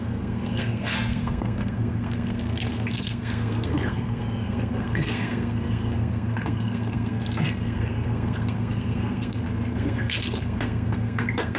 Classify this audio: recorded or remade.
remade